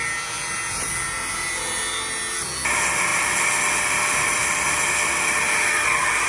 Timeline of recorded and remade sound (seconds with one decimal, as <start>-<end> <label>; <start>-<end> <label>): 0.0-6.3 recorded